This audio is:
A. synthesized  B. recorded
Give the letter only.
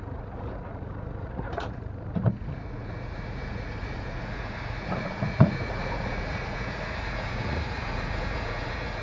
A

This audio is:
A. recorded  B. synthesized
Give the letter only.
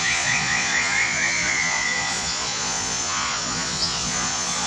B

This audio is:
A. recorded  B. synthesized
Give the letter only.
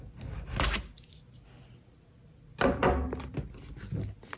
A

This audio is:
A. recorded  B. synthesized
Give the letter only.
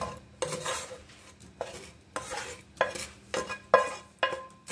A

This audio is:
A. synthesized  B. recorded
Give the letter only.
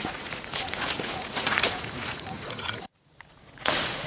A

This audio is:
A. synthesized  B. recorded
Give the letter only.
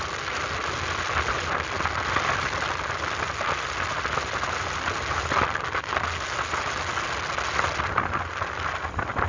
B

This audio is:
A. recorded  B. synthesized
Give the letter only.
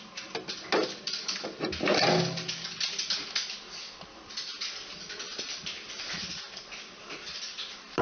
A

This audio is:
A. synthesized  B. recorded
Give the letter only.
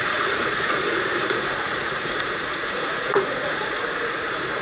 A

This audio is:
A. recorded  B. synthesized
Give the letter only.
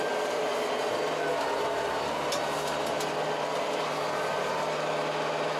A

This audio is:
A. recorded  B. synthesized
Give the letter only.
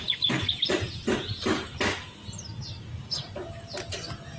A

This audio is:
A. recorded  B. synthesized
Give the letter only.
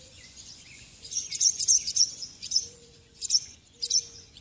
B